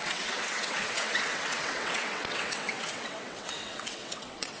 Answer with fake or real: fake